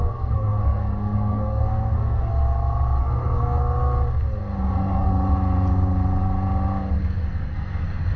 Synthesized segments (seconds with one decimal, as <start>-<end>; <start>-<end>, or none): 0.0-2.3; 3.0-3.6; 4.6-5.1; 7.0-8.2